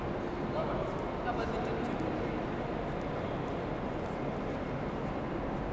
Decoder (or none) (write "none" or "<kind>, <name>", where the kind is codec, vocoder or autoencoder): none